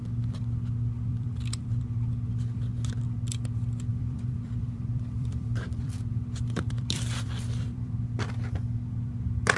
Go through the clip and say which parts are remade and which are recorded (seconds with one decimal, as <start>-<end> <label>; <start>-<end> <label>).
0.0-1.1 recorded; 1.1-1.8 remade; 1.8-3.9 recorded; 3.9-7.9 remade; 7.9-9.6 recorded